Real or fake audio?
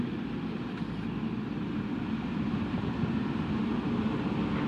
real